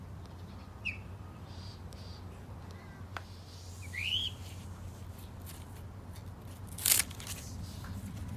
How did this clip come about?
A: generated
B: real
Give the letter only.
B